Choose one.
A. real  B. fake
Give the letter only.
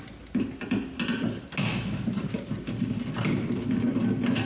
A